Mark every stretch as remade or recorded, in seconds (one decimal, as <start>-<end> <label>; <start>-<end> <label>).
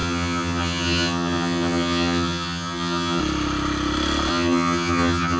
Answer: 0.0-3.2 remade; 3.2-4.3 recorded; 4.3-5.4 remade